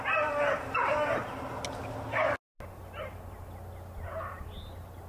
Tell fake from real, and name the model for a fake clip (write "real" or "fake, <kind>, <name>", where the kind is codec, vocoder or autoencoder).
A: real